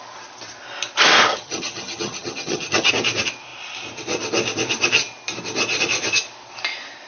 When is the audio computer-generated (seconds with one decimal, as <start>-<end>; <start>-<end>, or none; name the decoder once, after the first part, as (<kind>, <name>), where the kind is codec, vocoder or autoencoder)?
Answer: 1.3-2.9 (vocoder, HiFi-GAN)